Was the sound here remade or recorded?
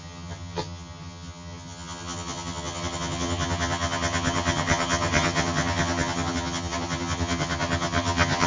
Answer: remade